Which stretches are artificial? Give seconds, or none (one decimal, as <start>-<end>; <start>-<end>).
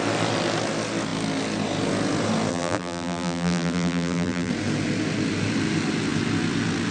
2.5-4.5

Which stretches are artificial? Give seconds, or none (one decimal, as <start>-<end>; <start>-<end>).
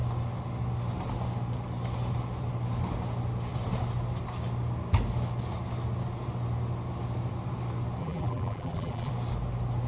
8.0-9.1